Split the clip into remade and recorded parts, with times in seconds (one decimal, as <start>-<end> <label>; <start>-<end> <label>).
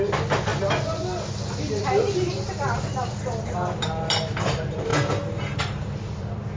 0.0-0.5 remade; 0.5-2.5 recorded; 2.5-4.9 remade; 4.9-5.6 recorded; 5.6-6.6 remade